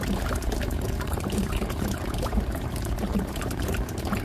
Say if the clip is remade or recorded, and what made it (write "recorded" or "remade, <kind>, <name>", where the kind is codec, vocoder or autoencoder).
remade, vocoder, BigVGAN v2